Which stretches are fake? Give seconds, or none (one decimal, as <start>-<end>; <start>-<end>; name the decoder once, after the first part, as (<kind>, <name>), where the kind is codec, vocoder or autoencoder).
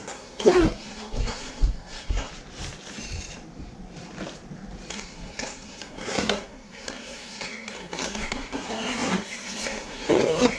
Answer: 0.0-2.3 (codec, SNAC); 4.9-10.6